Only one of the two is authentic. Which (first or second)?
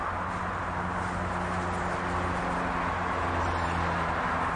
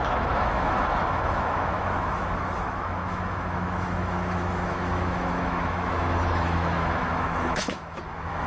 first